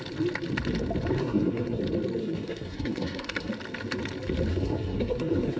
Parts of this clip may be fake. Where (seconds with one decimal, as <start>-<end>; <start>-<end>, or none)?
1.2-1.8; 2.2-3.5; 4.5-5.6